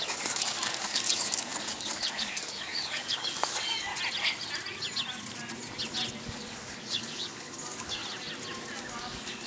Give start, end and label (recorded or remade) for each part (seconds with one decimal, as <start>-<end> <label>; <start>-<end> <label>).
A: 0.0-3.9 remade; 3.9-6.2 recorded; 6.2-8.0 remade; 8.0-8.8 recorded; 8.8-9.5 remade